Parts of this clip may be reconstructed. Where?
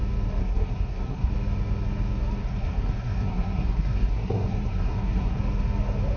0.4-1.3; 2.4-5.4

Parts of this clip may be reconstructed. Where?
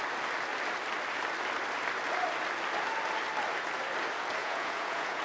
4.4-5.2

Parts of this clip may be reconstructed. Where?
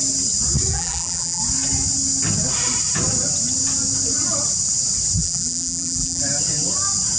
0.7-1.4; 5.2-6.2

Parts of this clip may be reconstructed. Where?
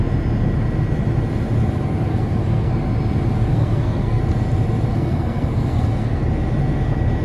2.1-2.7; 3.5-4.2; 4.9-6.2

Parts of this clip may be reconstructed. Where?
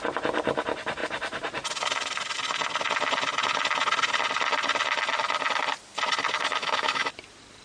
6.6-7.1